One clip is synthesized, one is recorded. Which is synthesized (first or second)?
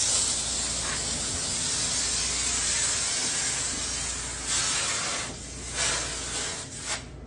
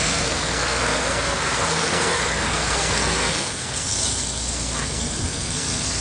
second